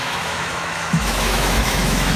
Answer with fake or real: fake